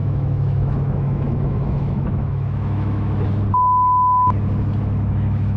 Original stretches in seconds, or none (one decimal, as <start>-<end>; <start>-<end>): 3.4-4.8